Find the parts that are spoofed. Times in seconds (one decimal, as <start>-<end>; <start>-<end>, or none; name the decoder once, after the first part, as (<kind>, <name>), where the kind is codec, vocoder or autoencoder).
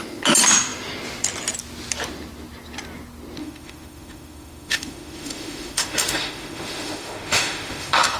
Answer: 3.4-8.2 (autoencoder, DAC-VAE)